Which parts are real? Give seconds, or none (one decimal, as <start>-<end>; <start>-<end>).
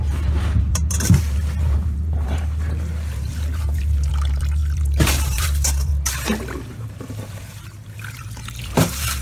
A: 5.9-6.7